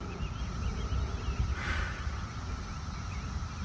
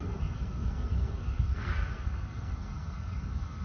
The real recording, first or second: first